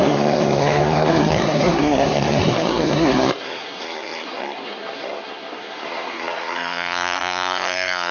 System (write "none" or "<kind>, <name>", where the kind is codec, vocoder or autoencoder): codec, SNAC